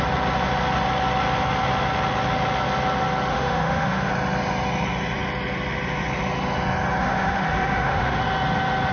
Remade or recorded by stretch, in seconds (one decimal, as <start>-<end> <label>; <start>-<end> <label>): 0.0-3.3 recorded; 3.3-4.1 remade; 4.1-7.0 recorded; 7.0-8.2 remade; 8.2-8.9 recorded

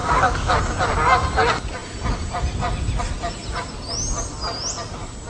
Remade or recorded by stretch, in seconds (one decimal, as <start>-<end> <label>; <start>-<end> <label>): 0.0-0.5 remade; 0.5-5.3 recorded

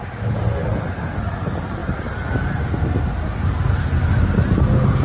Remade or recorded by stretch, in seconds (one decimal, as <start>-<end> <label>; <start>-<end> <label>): 0.0-5.0 recorded

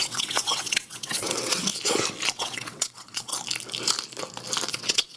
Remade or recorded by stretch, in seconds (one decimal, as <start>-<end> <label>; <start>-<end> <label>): 0.0-1.7 remade; 1.7-2.3 recorded; 2.3-3.3 remade; 3.3-4.7 recorded; 4.7-5.2 remade

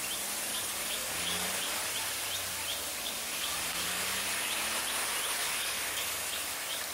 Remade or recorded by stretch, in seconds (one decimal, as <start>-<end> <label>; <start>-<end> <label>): 0.0-0.5 recorded; 0.5-1.8 remade; 1.8-2.7 recorded; 2.7-4.5 remade; 4.5-5.4 recorded; 5.4-6.9 remade